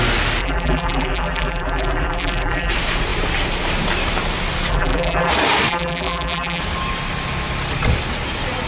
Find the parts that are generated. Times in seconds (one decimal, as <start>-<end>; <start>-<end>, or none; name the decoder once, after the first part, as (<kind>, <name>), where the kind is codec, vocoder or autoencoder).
0.4-2.7 (vocoder, BigVGAN v2); 4.7-5.3; 5.7-6.6

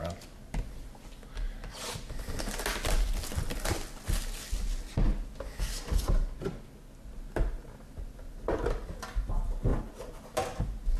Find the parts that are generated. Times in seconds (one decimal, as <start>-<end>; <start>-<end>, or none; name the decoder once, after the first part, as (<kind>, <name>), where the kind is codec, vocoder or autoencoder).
9.7-10.6 (vocoder, BigVGAN v2)

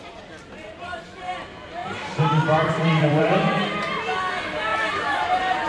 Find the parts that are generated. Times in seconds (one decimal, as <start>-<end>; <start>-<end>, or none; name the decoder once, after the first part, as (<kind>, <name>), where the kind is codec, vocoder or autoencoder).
1.8-4.3 (vocoder, BigVGAN v2); 4.7-5.3

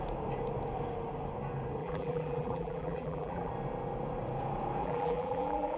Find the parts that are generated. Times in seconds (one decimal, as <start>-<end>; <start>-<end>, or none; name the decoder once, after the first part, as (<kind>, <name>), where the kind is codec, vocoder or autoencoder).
1.8-3.5 (vocoder, BigVGAN v2); 4.8-5.8

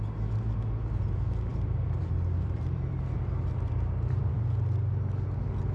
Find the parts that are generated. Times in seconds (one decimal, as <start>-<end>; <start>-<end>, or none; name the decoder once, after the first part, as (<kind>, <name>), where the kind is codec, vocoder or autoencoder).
1.5-4.4 (vocoder, BigVGAN v2)

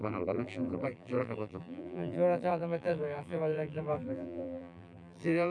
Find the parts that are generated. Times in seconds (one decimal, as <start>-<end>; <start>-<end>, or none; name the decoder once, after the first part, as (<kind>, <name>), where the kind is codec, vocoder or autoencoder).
0.0-5.5 (vocoder, BigVGAN v2)

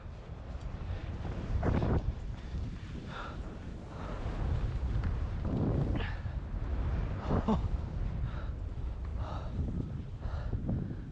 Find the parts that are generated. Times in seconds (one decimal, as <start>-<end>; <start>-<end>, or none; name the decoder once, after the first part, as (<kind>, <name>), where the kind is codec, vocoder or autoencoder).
1.0-3.6 (vocoder, BigVGAN v2); 9.1-10.1

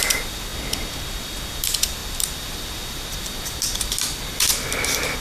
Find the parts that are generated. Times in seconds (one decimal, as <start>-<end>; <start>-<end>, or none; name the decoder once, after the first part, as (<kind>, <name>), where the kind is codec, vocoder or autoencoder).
0.0-0.5 (vocoder, BigVGAN v2); 1.5-5.2